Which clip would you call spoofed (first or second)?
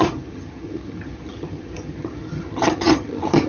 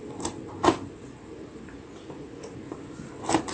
first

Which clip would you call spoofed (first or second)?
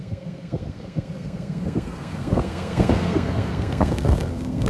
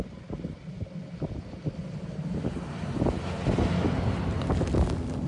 first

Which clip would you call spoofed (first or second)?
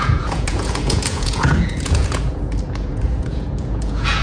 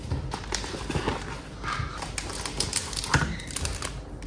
first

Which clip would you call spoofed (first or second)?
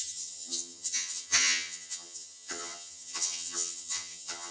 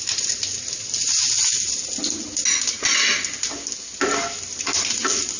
first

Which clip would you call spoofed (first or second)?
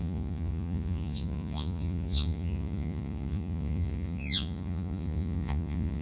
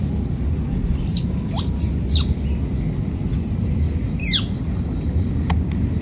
first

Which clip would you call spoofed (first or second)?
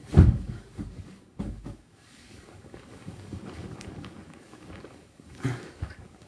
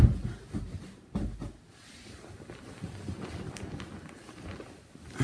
first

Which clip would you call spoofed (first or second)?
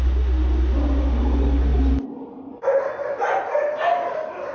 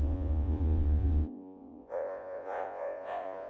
second